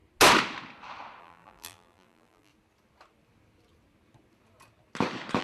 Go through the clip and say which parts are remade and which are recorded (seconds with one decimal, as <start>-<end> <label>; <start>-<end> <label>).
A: 0.0-1.2 recorded; 1.2-2.5 remade; 2.5-5.4 recorded